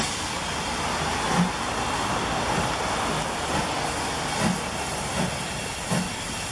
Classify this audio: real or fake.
real